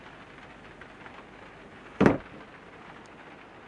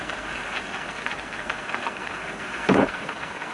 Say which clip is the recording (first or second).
first